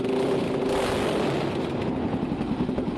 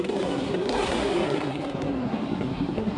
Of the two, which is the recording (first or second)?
first